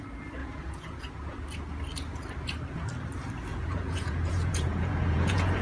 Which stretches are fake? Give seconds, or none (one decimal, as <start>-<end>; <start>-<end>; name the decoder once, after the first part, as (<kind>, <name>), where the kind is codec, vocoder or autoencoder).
0.4-1.1 (vocoder, Vocos); 3.5-5.6